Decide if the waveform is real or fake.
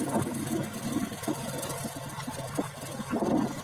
real